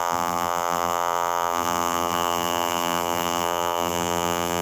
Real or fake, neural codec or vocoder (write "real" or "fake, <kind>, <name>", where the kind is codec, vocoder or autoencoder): fake, vocoder, BigVGAN v2